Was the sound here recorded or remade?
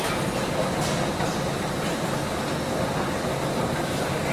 recorded